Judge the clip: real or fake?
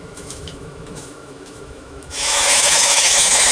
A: fake